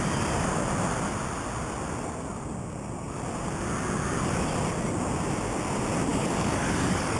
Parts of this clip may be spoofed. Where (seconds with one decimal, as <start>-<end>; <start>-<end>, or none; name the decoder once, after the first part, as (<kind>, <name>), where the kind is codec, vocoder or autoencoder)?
6.1-7.2 (codec, DAC)